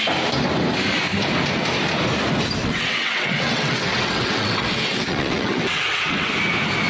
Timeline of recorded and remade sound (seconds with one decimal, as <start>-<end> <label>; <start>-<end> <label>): 0.0-2.6 recorded; 2.6-6.3 remade; 6.3-6.9 recorded